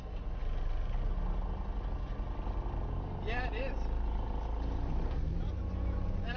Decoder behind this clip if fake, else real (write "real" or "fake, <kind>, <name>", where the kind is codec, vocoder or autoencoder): real